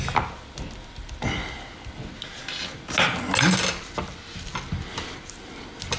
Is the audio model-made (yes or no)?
no